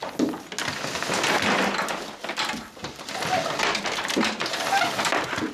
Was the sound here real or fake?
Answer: real